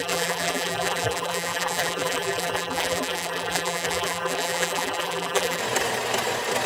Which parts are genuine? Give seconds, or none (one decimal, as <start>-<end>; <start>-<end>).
5.6-6.7